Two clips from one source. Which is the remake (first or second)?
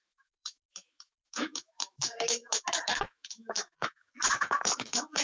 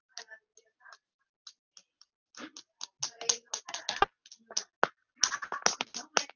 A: first